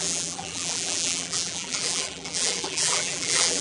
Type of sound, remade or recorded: remade